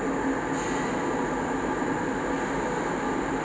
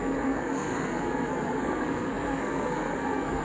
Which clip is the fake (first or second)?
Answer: second